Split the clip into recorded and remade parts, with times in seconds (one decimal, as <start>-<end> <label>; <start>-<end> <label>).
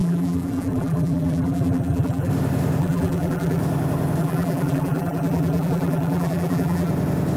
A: 0.0-2.3 remade; 2.3-2.8 recorded; 2.8-3.6 remade; 3.6-4.2 recorded; 4.2-6.9 remade; 6.9-7.4 recorded